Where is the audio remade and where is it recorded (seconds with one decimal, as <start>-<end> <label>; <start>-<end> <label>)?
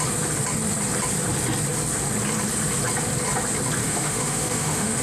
0.0-3.8 recorded; 3.8-5.0 remade